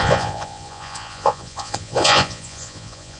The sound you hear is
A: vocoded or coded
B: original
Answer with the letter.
A